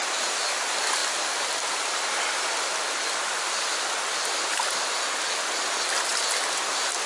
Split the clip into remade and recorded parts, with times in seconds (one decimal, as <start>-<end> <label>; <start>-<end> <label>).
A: 0.0-1.0 recorded; 1.0-5.3 remade; 5.3-6.1 recorded; 6.1-7.1 remade